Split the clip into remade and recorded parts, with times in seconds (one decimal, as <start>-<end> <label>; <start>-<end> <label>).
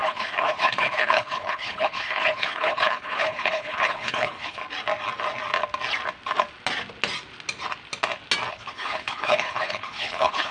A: 0.0-4.6 remade; 4.6-8.5 recorded; 8.5-10.5 remade